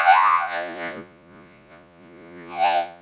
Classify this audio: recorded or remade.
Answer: remade